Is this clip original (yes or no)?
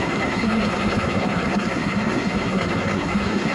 no